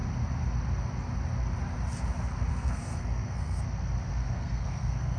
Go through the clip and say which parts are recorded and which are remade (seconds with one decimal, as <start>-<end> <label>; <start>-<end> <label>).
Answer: 0.0-2.5 recorded; 2.5-3.6 remade; 3.6-4.1 recorded; 4.1-5.2 remade